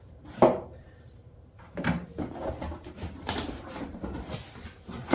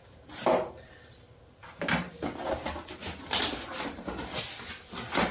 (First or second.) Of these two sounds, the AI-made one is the first